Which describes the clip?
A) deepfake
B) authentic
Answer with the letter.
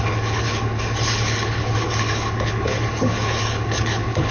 A